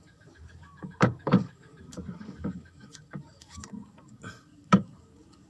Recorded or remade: remade